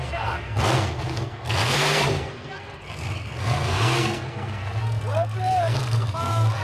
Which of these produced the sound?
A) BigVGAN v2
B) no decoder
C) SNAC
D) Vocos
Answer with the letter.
C